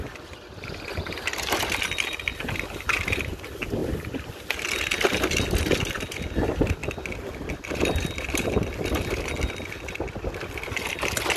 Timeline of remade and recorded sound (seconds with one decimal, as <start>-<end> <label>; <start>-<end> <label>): 0.0-11.4 recorded